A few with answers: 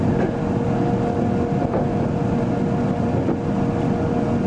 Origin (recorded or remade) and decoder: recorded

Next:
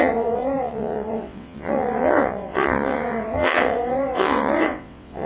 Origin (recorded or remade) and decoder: remade, vocoder, WaveNeXt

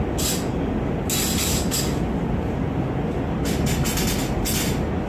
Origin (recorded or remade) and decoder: recorded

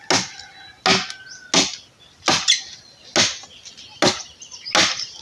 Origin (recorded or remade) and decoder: recorded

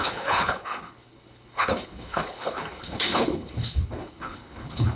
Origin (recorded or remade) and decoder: remade, codec, HILCodec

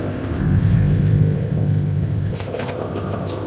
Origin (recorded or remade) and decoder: remade, codec, ZipCodec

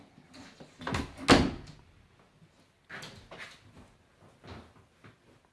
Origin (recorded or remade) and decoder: recorded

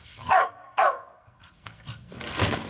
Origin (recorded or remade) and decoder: remade, codec, SNAC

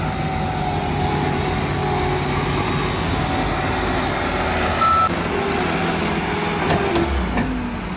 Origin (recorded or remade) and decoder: recorded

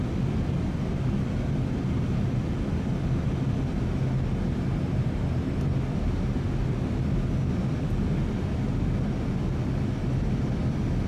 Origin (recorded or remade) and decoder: recorded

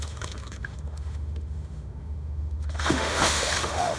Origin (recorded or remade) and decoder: remade, autoencoder, DAC-VAE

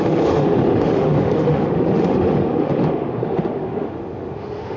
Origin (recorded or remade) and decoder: remade, autoencoder, DAC-VAE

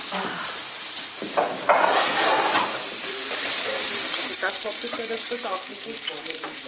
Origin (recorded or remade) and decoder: remade, vocoder, BigVGAN v2